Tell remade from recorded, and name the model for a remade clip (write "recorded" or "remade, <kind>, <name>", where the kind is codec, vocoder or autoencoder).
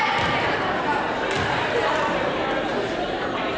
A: recorded